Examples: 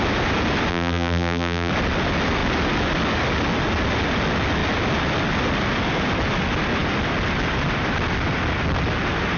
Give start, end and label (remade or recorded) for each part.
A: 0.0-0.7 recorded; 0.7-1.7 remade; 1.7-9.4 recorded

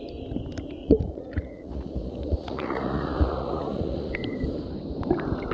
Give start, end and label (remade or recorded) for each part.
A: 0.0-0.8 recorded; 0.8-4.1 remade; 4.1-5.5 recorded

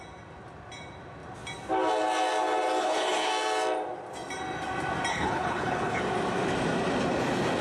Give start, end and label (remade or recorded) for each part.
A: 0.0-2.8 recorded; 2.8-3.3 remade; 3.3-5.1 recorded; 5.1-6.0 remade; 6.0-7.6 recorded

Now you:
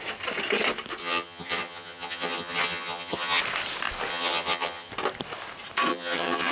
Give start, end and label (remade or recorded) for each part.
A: 0.0-1.0 recorded; 1.0-3.4 remade; 3.4-4.1 recorded; 4.1-4.9 remade; 4.9-5.9 recorded; 5.9-6.5 remade

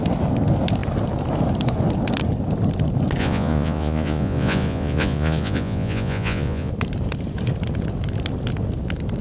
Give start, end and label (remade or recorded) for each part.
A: 0.0-3.2 recorded; 3.2-6.7 remade; 6.7-9.2 recorded

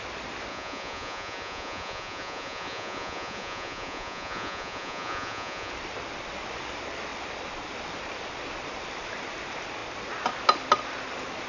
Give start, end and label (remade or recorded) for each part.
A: 0.0-0.5 recorded; 0.5-5.7 remade; 5.7-11.5 recorded

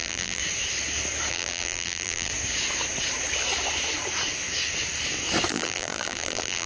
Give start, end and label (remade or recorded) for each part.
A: 0.0-0.4 remade; 0.4-1.3 recorded; 1.3-2.3 remade; 2.3-5.5 recorded; 5.5-6.7 remade

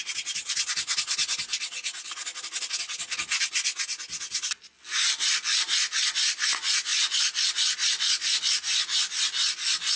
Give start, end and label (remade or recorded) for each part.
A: 0.0-10.0 recorded